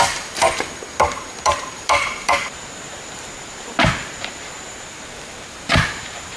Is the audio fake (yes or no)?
yes